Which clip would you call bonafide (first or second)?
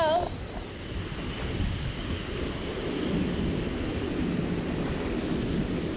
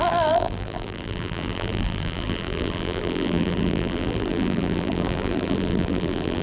first